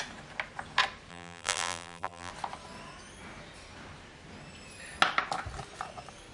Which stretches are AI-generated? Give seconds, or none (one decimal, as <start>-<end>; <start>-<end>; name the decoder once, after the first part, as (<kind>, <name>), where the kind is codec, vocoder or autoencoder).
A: 1.1-2.3 (vocoder, BigVGAN v2)